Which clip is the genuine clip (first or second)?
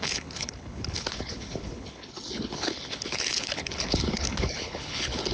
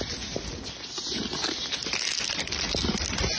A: second